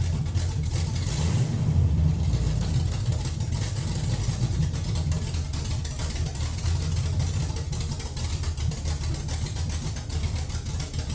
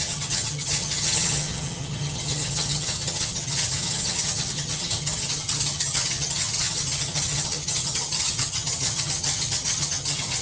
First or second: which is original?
first